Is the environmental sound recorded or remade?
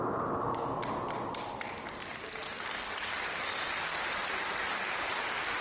recorded